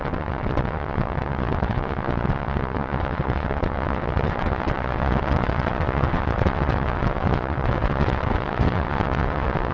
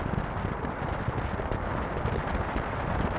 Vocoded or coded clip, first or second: first